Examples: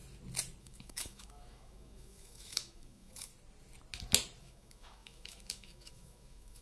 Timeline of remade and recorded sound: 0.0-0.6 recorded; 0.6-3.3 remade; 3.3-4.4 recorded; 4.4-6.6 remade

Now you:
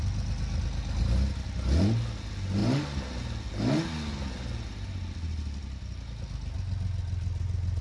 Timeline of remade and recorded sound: 0.0-7.8 recorded